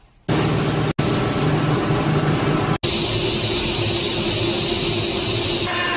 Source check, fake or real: real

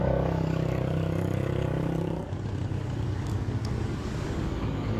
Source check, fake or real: fake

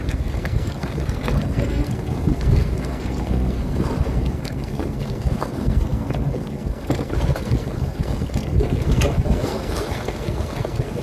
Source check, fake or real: fake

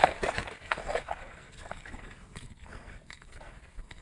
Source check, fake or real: fake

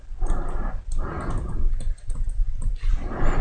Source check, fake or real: real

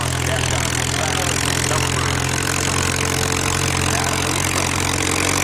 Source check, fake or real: real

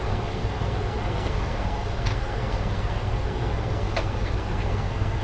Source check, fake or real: fake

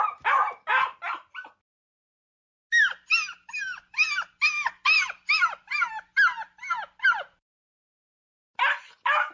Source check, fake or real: real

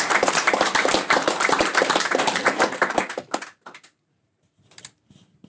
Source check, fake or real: fake